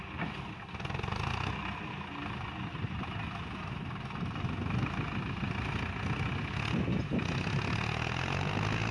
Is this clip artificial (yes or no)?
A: no